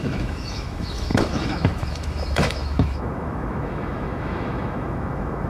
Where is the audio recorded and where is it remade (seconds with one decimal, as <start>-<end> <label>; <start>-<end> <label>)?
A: 0.0-5.5 remade